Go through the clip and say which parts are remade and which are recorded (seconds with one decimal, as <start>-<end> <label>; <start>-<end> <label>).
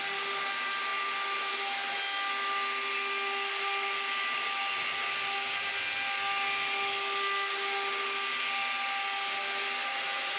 0.0-10.4 recorded